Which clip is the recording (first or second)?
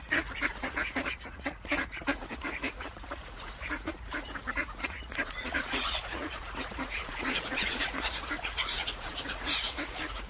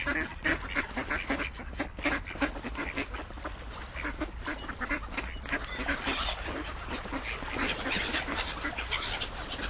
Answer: second